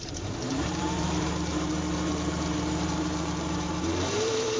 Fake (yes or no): yes